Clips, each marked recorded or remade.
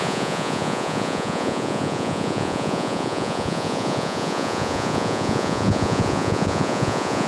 remade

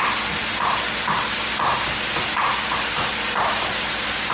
recorded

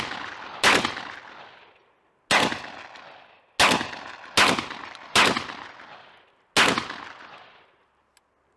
recorded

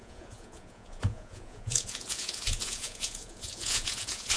remade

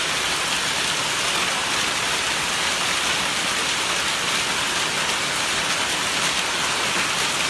recorded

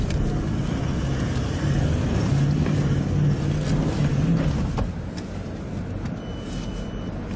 recorded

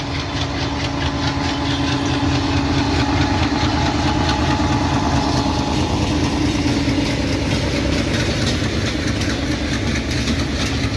recorded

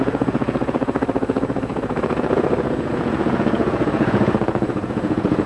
remade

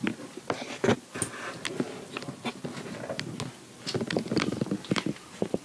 recorded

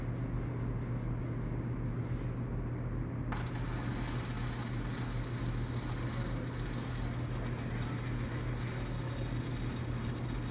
recorded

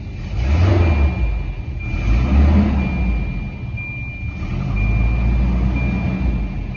recorded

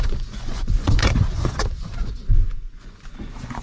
remade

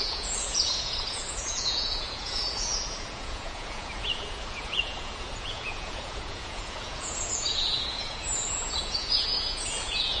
remade